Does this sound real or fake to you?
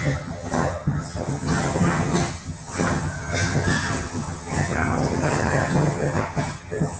fake